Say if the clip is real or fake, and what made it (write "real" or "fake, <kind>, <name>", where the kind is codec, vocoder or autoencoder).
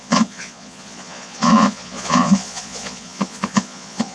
fake, vocoder, Vocos